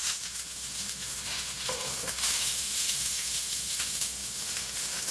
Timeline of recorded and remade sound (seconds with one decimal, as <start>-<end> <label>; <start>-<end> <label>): 0.0-5.1 remade